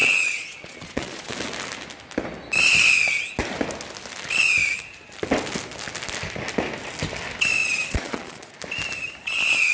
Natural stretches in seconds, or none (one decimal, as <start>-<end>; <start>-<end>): 1.3-7.6; 8.5-9.7